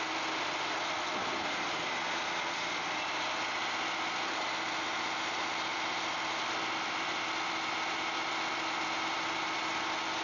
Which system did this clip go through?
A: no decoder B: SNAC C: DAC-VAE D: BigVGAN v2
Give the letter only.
A